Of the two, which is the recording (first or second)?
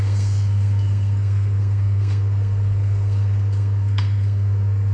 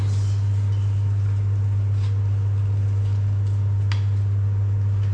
second